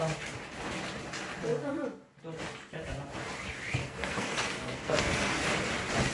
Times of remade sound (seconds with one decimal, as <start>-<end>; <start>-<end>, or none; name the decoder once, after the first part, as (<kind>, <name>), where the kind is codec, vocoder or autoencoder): 3.8-5.3 (codec, SNAC)